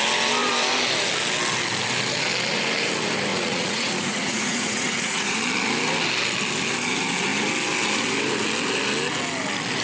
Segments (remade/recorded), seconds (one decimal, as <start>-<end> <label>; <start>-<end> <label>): 0.0-3.3 recorded; 3.3-5.4 remade; 5.4-9.8 recorded